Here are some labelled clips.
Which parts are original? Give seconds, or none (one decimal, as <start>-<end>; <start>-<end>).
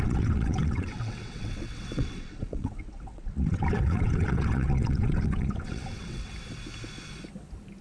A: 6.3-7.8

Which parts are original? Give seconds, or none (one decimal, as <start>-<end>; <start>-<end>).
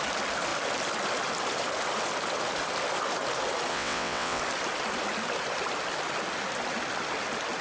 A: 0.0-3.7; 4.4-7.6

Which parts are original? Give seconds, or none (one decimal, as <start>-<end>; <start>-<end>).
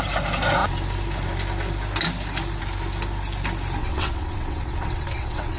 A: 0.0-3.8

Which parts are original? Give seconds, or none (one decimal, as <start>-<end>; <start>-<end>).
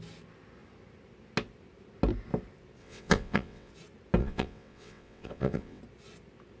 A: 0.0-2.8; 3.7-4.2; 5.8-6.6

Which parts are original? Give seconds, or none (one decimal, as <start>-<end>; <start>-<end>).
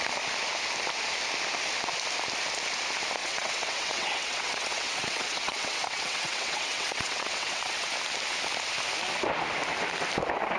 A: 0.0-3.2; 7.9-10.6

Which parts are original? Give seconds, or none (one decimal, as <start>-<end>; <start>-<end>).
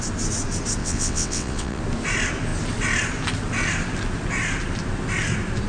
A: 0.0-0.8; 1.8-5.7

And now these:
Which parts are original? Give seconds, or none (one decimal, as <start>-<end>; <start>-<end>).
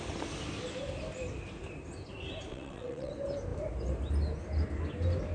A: 0.0-2.5; 3.1-5.3